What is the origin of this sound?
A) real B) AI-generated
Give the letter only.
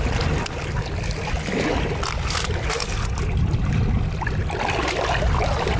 A